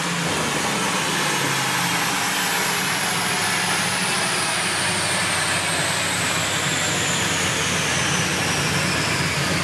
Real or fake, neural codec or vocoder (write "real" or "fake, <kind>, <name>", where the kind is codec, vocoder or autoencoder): real